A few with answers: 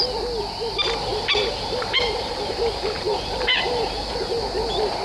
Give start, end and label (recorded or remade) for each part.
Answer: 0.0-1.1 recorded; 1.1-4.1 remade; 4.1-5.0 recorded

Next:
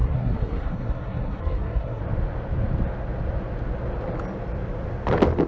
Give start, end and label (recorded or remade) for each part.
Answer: 0.0-2.0 remade; 2.0-5.5 recorded

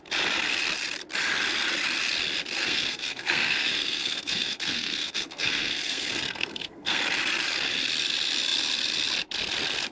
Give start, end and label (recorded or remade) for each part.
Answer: 0.0-2.6 recorded; 2.6-7.0 remade; 7.0-9.9 recorded